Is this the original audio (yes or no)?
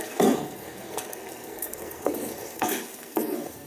no